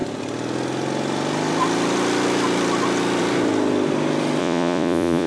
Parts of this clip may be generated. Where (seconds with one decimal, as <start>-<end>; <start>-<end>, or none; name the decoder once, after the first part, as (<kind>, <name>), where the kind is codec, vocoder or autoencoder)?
4.4-5.3 (vocoder, Vocos)

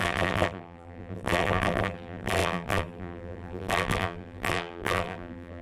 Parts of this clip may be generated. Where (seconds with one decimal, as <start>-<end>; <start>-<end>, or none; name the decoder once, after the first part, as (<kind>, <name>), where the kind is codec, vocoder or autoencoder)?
0.0-5.6 (vocoder, BigVGAN v2)

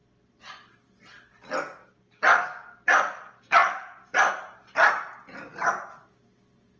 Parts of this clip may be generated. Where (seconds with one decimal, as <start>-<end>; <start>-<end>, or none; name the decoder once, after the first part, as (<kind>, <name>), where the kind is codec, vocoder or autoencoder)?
none

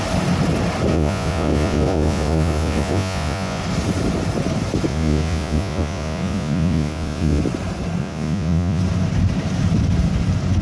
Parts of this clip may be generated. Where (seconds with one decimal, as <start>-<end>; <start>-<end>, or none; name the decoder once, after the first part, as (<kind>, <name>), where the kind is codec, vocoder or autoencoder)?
0.9-3.6 (vocoder, Vocos); 4.9-7.4; 8.0-8.8

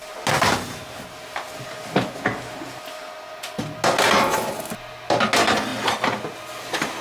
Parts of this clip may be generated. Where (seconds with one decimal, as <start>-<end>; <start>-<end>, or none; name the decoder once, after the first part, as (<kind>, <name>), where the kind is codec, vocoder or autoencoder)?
none

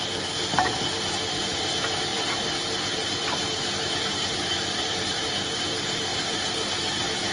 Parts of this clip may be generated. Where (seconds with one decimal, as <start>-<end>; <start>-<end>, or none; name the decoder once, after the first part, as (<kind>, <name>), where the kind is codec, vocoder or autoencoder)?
0.0-7.3 (vocoder, BigVGAN v2)

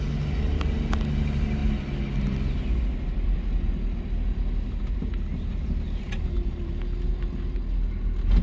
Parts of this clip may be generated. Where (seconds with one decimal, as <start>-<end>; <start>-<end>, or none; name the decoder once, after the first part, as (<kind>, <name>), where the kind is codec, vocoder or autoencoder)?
none